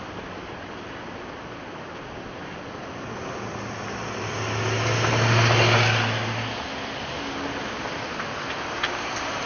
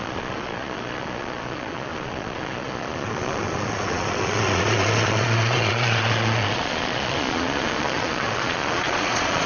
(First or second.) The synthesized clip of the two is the second